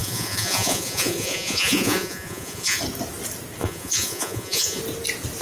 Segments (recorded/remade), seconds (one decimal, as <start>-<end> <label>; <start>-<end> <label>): 0.0-2.8 remade; 2.8-3.6 recorded; 3.6-4.8 remade; 4.8-5.4 recorded